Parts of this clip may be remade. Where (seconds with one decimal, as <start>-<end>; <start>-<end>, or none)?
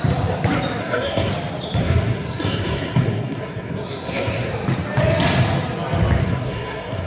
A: 0.8-1.3; 1.8-4.5; 6.2-7.1